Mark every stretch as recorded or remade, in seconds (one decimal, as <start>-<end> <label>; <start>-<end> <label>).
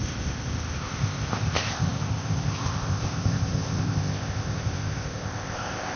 0.0-6.0 remade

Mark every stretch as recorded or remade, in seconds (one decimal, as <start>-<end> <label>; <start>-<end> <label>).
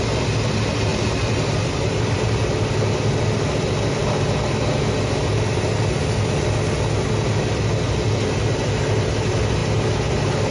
0.0-10.5 recorded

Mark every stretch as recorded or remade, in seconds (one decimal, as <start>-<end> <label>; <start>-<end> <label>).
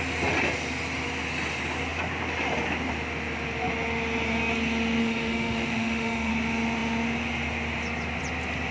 0.0-5.0 recorded; 5.0-6.3 remade; 6.3-8.7 recorded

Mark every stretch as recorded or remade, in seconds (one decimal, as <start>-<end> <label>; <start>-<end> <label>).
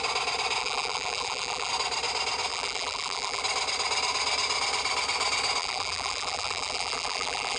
0.0-0.6 recorded; 0.6-1.7 remade; 1.7-2.5 recorded; 2.5-3.4 remade; 3.4-5.6 recorded; 5.6-7.6 remade